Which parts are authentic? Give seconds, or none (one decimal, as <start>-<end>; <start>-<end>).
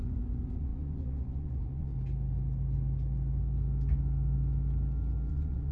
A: 1.9-5.3